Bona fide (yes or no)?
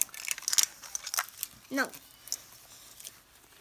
yes